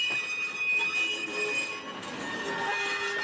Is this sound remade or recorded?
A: recorded